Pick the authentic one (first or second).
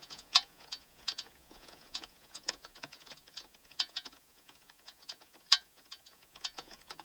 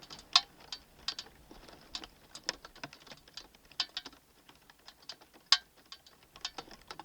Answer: second